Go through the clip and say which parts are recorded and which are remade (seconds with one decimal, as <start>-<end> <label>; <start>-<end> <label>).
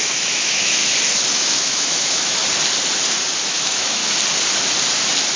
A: 0.0-0.8 remade; 0.8-1.3 recorded; 1.3-2.4 remade; 2.4-3.4 recorded; 3.4-4.0 remade; 4.0-5.4 recorded